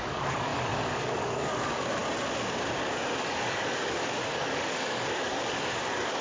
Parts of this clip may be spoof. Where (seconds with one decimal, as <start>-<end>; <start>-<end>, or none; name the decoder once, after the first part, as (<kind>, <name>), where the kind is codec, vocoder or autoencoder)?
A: 0.0-2.0 (codec, DAC); 3.2-6.2